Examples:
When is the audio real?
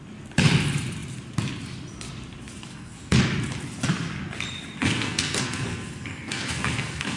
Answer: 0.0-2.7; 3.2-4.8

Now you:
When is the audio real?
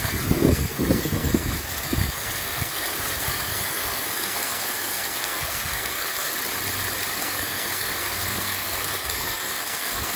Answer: 6.3-7.1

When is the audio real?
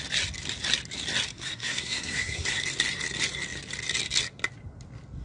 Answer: 0.0-1.3; 2.6-5.2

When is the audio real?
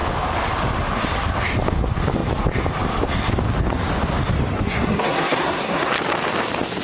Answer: 0.0-4.5; 5.9-6.8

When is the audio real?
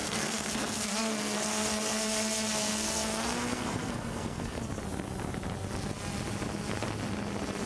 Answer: 4.6-7.7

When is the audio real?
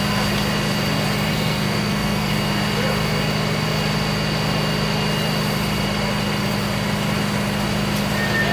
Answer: 0.0-1.3; 2.3-8.5